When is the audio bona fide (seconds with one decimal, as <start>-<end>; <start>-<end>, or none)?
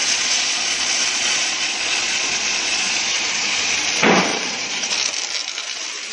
3.7-4.3; 4.9-6.1